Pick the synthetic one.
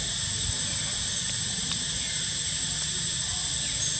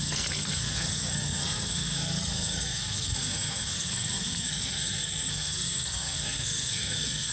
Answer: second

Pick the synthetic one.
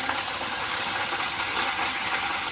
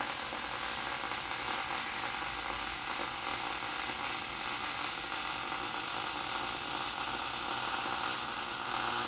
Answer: first